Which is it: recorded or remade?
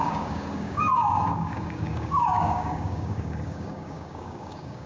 remade